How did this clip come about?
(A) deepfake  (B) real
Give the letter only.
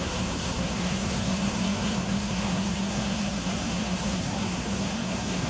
A